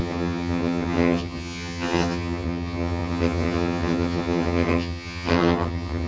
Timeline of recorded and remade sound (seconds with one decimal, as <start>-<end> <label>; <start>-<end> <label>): 0.0-6.1 remade